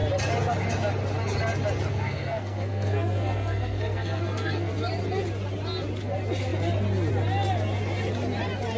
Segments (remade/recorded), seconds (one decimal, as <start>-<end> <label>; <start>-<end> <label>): 0.0-1.9 recorded; 1.9-4.7 remade; 4.7-8.8 recorded